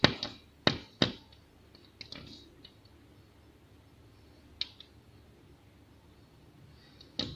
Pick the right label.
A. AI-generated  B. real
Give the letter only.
B